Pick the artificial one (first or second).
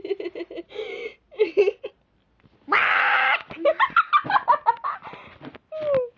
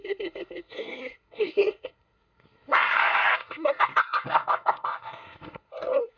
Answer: second